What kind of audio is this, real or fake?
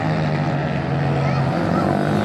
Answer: real